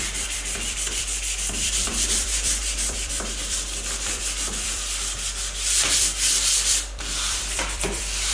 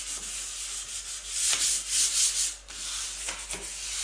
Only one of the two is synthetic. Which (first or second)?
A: first